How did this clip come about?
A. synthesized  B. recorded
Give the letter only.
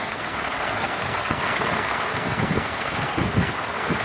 A